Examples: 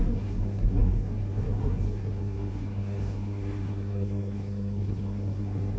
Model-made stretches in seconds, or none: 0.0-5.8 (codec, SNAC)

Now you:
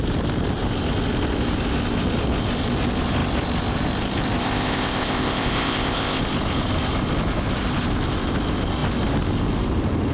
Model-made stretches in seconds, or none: 4.4-6.2 (codec, ZipCodec)

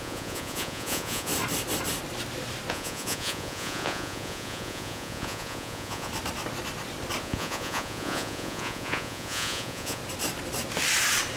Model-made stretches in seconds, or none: 0.0-1.3 (vocoder, Vocos); 2.7-6.1; 7.2-10.0

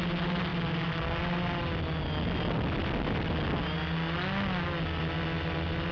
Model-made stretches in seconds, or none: none